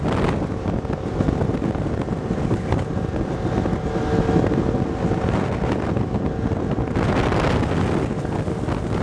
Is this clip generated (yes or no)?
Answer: no